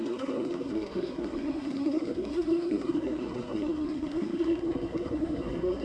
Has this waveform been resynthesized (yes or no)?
yes